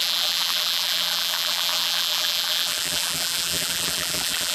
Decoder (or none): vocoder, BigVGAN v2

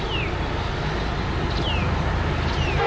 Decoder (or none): none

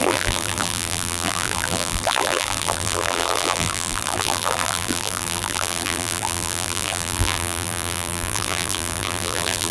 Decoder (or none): vocoder, BigVGAN v2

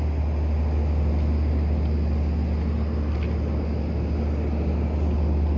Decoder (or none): none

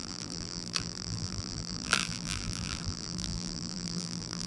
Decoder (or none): vocoder, BigVGAN v2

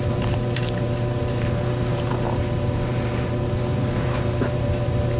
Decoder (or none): vocoder, BigVGAN v2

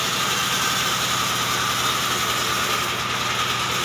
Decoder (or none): none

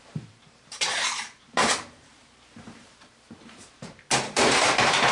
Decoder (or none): vocoder, BigVGAN v2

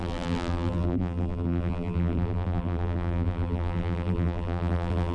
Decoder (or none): vocoder, BigVGAN v2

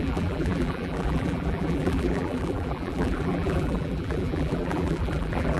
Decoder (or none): vocoder, BigVGAN v2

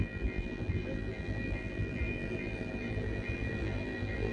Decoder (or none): vocoder, BigVGAN v2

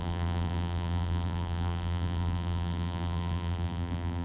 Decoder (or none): vocoder, BigVGAN v2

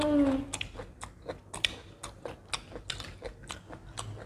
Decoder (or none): none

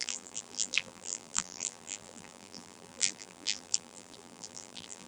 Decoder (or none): vocoder, BigVGAN v2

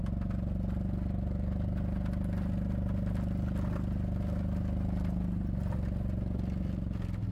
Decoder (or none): none